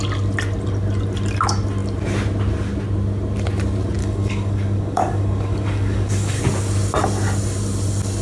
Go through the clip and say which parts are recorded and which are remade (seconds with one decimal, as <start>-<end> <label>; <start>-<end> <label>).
0.0-4.0 recorded; 4.0-6.4 remade; 6.4-8.2 recorded